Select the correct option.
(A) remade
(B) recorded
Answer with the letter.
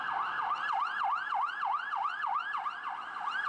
B